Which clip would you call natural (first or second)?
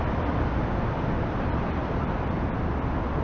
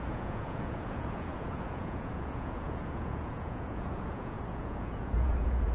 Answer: first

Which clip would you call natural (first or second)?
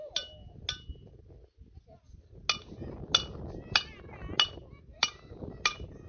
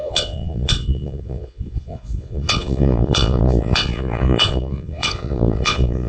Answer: first